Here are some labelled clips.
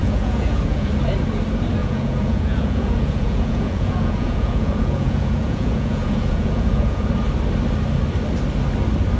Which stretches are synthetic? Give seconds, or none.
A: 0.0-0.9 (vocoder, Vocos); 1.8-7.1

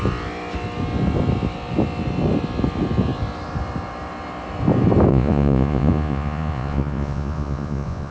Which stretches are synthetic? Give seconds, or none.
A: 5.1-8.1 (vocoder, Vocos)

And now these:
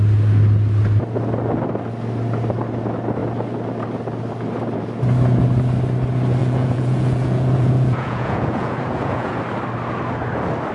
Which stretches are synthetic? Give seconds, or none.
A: 6.4-9.4 (vocoder, Vocos)